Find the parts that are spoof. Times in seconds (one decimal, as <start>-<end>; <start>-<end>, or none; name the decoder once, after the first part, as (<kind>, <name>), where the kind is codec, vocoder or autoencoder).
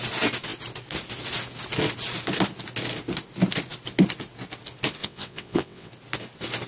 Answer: 5.0-5.9 (vocoder, WaveNeXt)